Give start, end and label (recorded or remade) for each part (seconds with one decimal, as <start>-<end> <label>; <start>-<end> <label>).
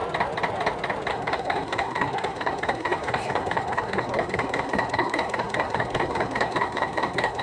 0.0-1.1 recorded; 1.1-7.4 remade